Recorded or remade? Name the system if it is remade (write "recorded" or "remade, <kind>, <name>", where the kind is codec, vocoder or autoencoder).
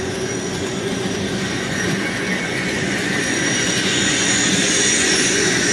remade, vocoder, Vocos